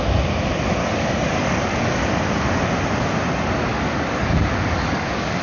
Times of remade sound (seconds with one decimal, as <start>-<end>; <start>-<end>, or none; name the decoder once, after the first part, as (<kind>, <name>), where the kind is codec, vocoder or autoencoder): 0.8-2.1 (codec, DAC); 3.7-5.4